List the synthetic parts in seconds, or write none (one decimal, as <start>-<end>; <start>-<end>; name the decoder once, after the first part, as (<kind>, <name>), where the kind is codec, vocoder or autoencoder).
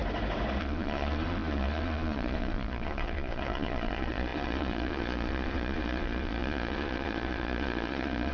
0.6-8.3 (vocoder, Vocos)